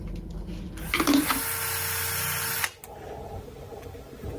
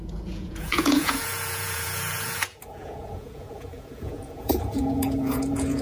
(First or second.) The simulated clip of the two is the second